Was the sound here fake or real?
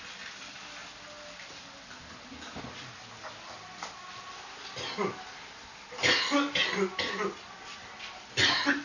real